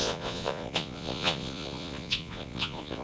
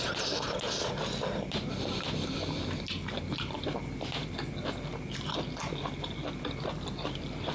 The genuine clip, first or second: second